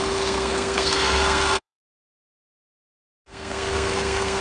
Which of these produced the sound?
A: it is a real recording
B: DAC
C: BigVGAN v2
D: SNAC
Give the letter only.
D